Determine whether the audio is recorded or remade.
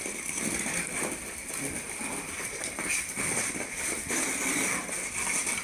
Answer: recorded